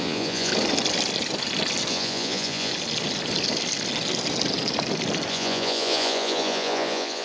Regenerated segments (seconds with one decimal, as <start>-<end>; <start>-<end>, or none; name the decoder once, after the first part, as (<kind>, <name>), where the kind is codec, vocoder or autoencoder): 0.0-0.5 (vocoder, Vocos); 1.9-2.7; 5.3-7.2